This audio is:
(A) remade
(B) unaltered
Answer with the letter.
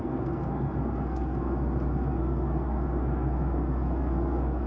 A